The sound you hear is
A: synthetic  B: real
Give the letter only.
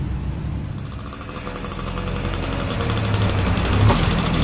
B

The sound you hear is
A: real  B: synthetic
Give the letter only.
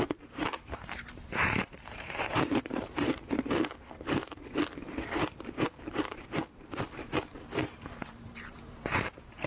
B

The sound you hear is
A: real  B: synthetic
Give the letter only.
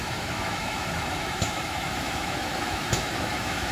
B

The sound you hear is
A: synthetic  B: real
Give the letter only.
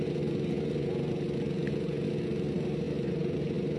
B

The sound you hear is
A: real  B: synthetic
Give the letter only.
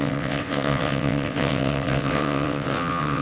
B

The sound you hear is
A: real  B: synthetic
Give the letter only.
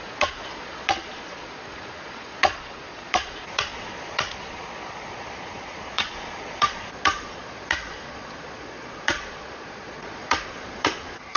B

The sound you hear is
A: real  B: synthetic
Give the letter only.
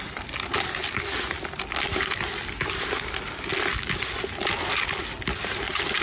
A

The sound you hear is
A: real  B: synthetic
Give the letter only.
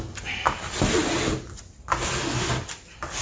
A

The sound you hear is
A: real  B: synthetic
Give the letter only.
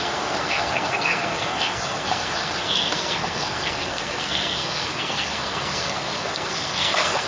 B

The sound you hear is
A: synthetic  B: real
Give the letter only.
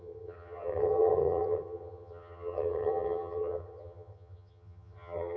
A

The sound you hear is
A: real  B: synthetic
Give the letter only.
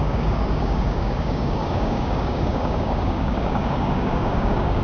B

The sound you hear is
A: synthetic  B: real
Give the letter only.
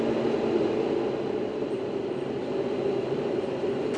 B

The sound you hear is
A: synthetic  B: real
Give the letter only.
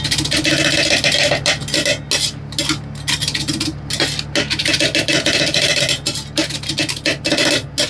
B